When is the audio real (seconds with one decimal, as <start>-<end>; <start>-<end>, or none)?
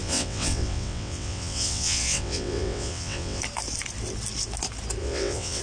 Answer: 3.4-5.0